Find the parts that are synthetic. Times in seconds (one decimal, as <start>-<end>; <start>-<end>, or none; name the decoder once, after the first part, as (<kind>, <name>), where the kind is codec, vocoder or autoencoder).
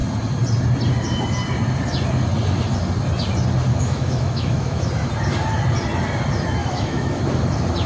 3.7-4.9 (autoencoder, DAC-VAE); 6.6-7.2